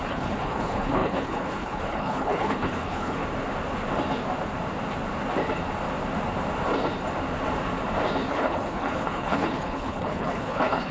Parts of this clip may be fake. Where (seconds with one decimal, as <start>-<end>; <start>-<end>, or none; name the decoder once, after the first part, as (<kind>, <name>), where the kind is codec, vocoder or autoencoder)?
0.0-3.2 (codec, HILCodec); 8.3-10.9